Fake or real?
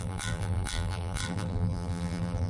fake